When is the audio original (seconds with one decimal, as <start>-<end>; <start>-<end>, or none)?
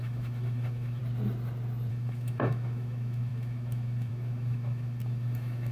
1.0-1.9